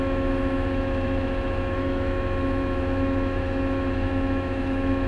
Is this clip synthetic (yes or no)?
yes